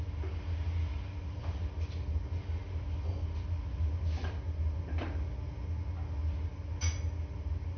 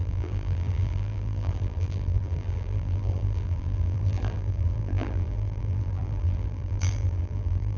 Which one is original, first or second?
first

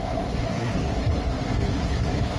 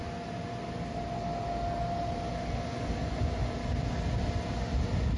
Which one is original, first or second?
second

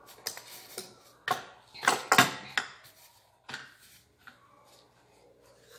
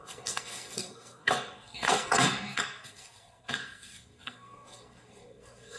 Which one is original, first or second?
first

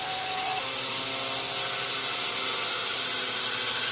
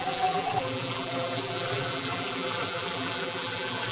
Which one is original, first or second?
first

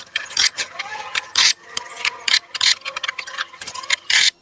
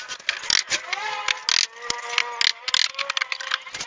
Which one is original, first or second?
second